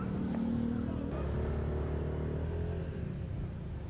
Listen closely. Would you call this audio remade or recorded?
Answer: recorded